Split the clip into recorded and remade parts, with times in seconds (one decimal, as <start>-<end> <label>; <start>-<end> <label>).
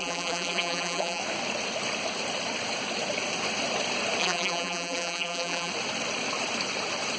0.0-1.2 remade; 1.2-4.2 recorded; 4.2-5.7 remade; 5.7-7.2 recorded